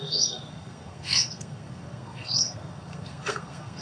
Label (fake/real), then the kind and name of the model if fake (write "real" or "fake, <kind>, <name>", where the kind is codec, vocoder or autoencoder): fake, codec, SNAC